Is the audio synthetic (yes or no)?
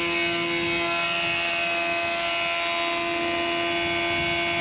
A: no